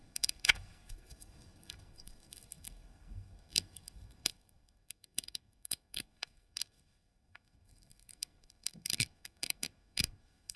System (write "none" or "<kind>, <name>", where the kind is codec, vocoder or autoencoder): codec, SNAC